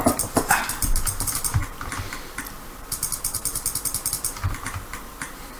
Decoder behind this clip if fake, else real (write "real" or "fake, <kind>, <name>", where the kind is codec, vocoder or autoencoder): fake, vocoder, BigVGAN v2